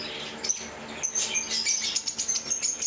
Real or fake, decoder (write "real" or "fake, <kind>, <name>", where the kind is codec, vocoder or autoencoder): real